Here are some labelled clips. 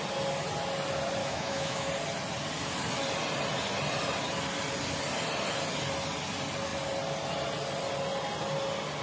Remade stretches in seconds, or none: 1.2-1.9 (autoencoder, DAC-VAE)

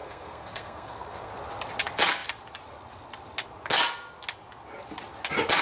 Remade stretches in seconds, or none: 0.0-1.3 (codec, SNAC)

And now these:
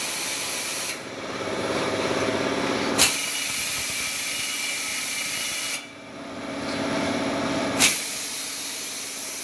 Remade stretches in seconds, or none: 0.0-2.3 (vocoder, BigVGAN v2); 2.9-9.4

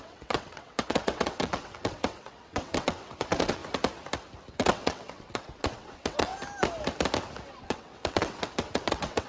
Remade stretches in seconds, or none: 0.0-3.6 (vocoder, WaveNeXt); 4.5-6.3; 7.5-9.3

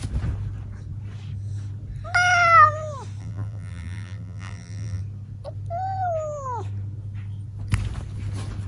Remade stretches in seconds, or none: 3.2-5.0 (vocoder, BigVGAN v2)

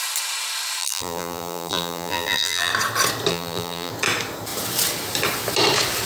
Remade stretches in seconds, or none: 0.8-2.7 (vocoder, BigVGAN v2); 3.3-3.9